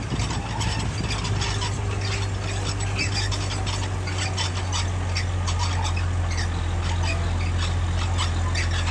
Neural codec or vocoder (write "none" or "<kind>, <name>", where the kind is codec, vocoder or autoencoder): none